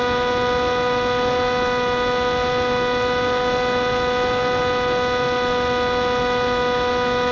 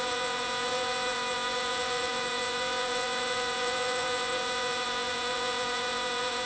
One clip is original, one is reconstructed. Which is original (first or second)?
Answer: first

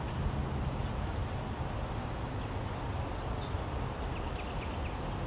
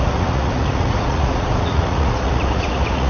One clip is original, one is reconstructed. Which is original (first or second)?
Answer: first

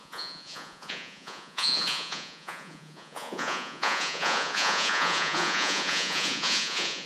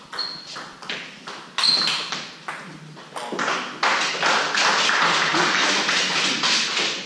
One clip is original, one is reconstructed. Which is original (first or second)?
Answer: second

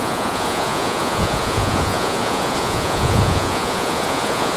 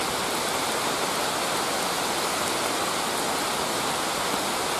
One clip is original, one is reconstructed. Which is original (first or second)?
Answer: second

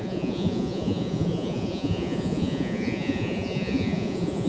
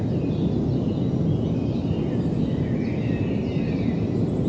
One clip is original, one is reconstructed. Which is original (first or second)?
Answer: second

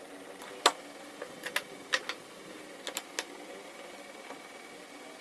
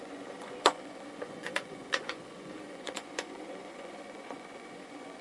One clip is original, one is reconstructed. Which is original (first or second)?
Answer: first